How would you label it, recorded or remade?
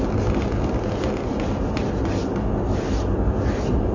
recorded